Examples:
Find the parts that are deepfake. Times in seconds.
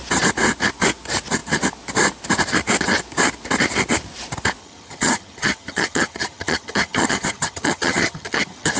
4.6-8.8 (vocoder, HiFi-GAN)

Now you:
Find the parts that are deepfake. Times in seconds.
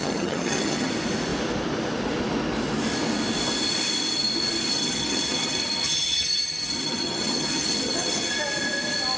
0.0-0.9 (vocoder, HiFi-GAN); 4.7-8.3